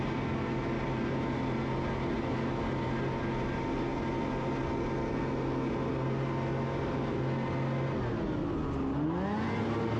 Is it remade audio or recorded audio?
recorded